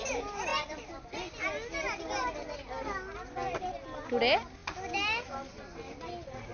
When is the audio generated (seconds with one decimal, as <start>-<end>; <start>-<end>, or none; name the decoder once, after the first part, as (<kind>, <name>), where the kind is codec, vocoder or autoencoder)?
none